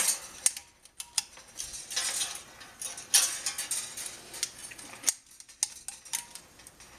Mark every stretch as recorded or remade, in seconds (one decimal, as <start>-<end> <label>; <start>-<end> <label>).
0.0-4.6 recorded; 4.6-5.1 remade; 5.1-7.0 recorded